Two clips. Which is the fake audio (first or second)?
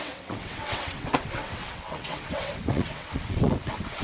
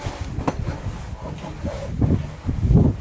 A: first